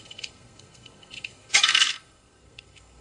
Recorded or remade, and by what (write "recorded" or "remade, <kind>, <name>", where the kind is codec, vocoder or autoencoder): remade, codec, SNAC